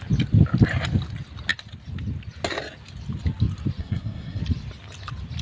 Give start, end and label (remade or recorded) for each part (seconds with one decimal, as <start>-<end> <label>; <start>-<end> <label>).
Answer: 0.0-3.8 recorded; 3.8-4.4 remade; 4.4-5.4 recorded